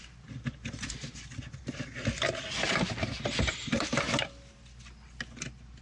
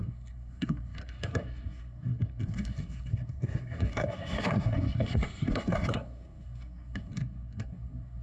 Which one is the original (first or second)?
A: first